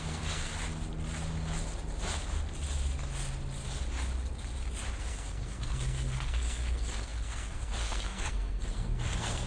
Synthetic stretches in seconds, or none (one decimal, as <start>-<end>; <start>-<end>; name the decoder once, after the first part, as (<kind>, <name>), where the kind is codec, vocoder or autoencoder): 0.0-0.5 (codec, SNAC); 5.0-9.5

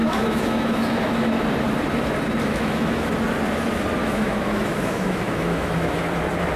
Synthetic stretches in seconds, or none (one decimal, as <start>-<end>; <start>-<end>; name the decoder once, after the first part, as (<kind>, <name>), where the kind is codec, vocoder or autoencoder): 0.0-1.4 (autoencoder, DAC-VAE); 2.4-3.1; 4.0-6.0

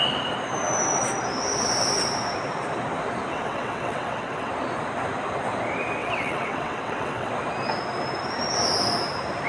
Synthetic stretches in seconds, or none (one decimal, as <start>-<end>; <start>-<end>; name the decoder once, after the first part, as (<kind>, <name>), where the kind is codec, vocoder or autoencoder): 3.3-4.5 (vocoder, WaveNeXt); 6.0-7.3